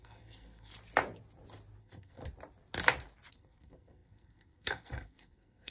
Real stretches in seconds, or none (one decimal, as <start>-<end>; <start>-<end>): 0.7-1.8; 2.2-3.3